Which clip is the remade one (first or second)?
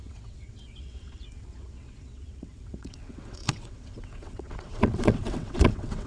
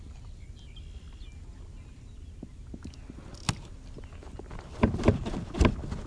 first